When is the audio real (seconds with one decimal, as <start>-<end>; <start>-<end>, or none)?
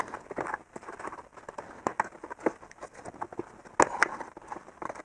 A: 0.0-5.0